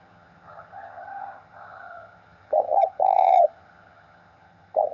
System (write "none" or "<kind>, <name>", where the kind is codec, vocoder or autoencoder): vocoder, HiFi-GAN